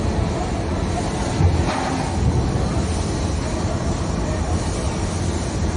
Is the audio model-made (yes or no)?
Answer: no